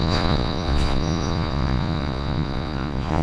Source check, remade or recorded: remade